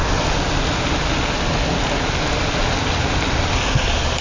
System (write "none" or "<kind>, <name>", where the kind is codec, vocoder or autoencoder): none